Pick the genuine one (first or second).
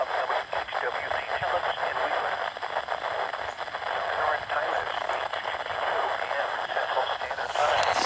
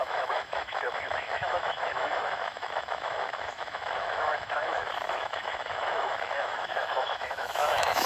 first